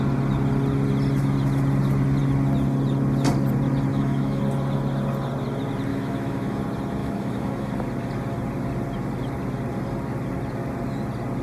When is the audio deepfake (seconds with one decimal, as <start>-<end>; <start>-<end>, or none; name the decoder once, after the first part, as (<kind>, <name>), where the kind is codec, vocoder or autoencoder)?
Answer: 3.9-4.4 (autoencoder, DAC-VAE); 5.9-6.6; 7.0-7.7